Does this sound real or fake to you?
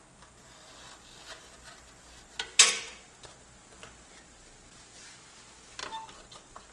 real